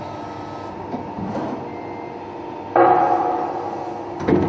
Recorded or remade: recorded